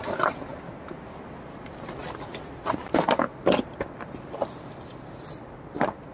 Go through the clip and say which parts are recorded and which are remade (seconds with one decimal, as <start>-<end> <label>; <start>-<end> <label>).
0.0-6.1 recorded